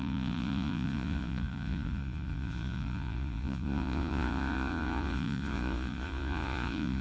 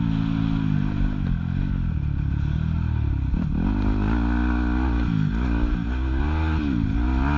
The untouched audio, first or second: second